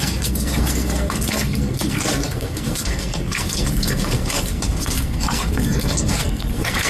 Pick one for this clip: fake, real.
fake